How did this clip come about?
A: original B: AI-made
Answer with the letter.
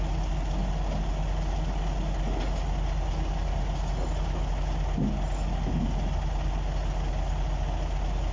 A